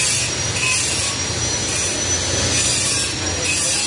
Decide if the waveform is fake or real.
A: real